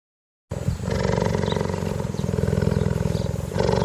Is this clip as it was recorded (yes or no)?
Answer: yes